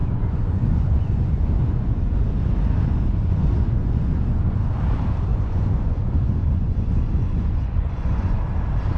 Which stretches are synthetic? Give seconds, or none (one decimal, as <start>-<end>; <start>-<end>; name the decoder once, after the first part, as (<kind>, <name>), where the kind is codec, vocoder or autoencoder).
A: 0.0-4.7 (vocoder, Vocos); 5.3-8.4